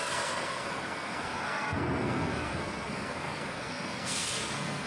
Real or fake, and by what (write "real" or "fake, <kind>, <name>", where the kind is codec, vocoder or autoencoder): fake, codec, SNAC